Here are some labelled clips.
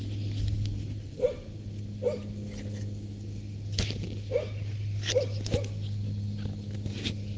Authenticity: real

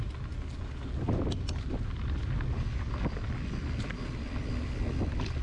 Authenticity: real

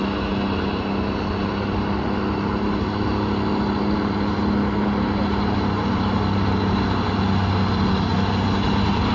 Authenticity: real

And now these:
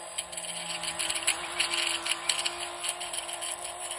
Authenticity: real